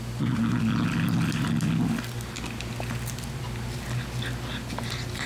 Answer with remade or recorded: recorded